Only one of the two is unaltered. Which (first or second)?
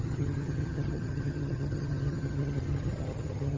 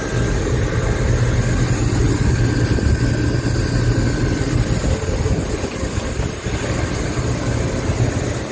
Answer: second